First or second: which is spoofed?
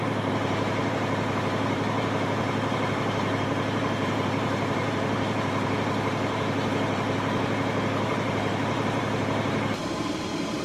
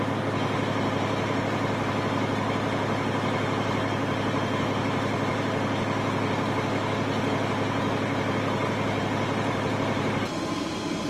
first